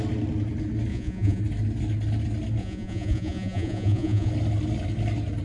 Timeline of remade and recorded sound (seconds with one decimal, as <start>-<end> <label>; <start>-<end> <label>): 0.0-0.9 recorded; 0.9-1.4 remade; 1.4-2.6 recorded; 2.6-4.3 remade; 4.3-5.4 recorded